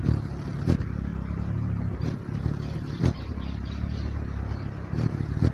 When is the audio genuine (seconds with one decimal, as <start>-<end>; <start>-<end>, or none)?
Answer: 0.0-5.5